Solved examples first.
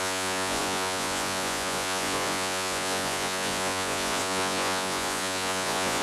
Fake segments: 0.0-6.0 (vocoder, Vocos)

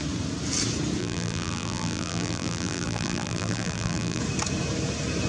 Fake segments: 1.0-4.2 (vocoder, BigVGAN v2)

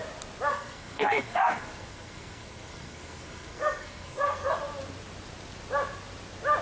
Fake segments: 0.5-4.5 (codec, SNAC)

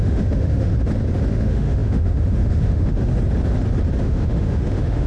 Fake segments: 0.0-0.7 (autoencoder, DAC-VAE); 1.3-3.1; 4.0-5.1